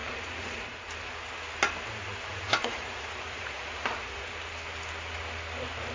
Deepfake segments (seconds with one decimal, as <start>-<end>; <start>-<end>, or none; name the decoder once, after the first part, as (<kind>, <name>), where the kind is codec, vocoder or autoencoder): 0.0-0.8 (vocoder, Vocos); 2.3-4.3